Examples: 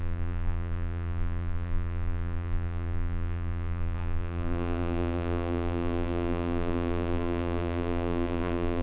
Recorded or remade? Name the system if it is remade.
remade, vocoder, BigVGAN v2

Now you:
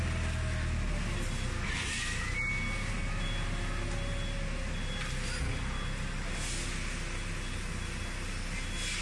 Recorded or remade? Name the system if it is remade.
recorded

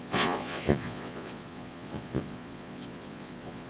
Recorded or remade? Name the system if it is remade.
remade, vocoder, Vocos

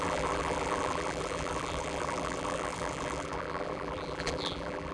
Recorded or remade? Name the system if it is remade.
remade, vocoder, BigVGAN v2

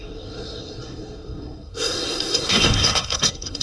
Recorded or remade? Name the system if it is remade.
remade, codec, SNAC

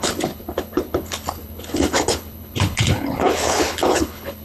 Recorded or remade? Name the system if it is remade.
remade, codec, HILCodec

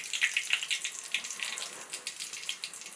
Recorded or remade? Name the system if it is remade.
recorded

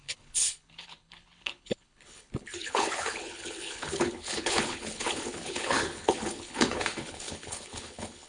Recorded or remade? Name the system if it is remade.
remade, codec, HILCodec